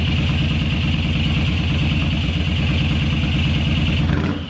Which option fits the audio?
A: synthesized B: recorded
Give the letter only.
B